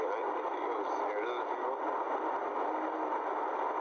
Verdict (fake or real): real